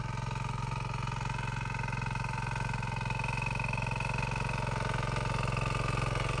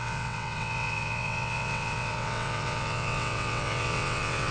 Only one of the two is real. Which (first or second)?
first